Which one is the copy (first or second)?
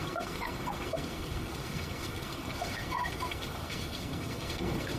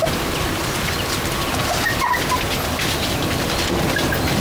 first